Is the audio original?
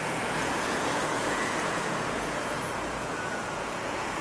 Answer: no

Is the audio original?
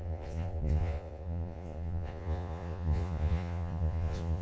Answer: no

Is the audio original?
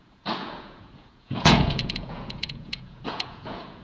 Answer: no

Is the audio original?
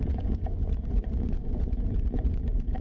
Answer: no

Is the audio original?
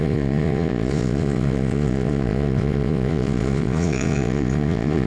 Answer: no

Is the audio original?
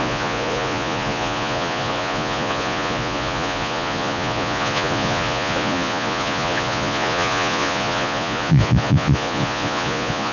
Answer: no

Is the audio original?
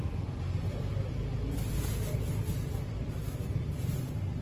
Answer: yes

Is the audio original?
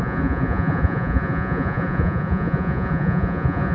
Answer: no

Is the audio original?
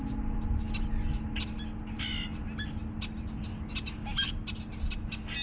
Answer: yes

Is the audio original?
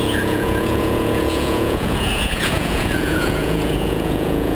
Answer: no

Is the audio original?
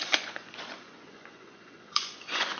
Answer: no